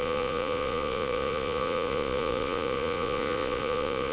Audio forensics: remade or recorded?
remade